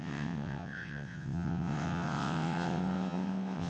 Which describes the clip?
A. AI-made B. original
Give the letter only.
A